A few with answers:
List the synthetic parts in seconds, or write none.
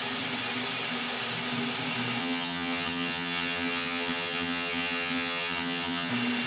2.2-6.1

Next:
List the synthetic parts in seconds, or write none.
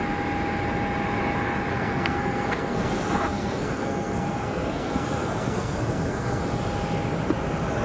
1.7-6.4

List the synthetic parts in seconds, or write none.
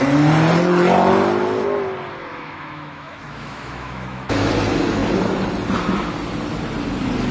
2.3-4.5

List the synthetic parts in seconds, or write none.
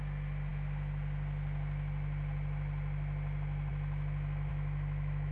4.5-5.3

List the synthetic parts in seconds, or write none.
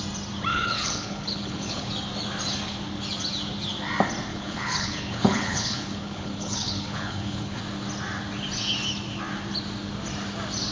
0.5-1.9; 4.3-7.6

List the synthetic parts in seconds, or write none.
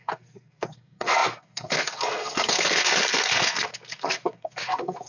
0.0-5.1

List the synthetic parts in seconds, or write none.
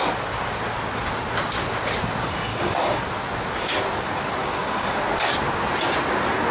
2.5-3.0; 4.4-5.0